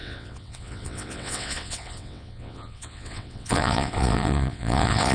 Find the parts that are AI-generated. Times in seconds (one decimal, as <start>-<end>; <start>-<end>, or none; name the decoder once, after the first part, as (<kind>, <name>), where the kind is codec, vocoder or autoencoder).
0.0-5.1 (vocoder, WaveNeXt)